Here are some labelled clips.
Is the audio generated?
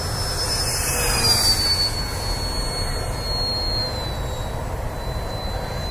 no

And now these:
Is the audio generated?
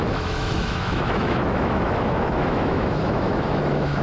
yes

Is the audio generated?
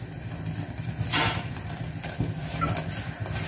no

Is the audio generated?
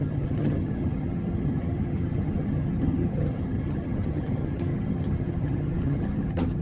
yes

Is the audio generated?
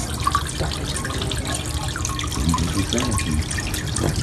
no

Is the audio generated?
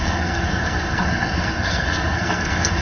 yes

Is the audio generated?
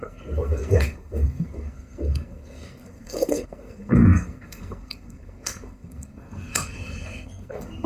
yes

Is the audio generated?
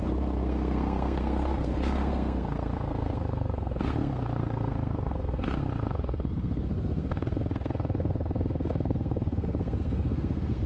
yes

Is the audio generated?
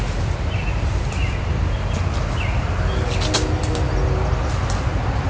no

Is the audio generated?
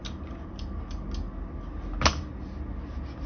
no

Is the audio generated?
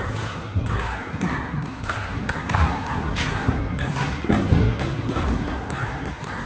yes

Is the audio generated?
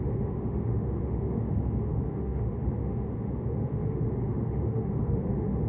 yes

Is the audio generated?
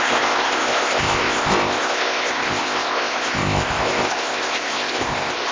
yes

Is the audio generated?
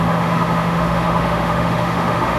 yes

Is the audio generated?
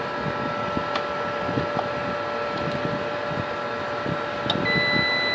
no